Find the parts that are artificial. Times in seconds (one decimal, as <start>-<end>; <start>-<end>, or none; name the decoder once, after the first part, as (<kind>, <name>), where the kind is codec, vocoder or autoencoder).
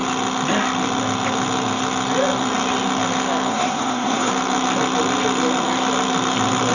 3.5-4.3 (codec, SNAC)